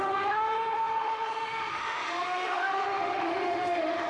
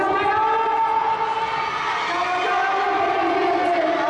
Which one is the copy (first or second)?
first